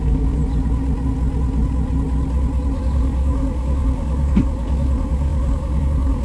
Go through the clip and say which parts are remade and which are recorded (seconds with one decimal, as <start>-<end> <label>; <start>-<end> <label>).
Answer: 0.0-0.4 remade; 0.4-2.8 recorded; 2.8-6.2 remade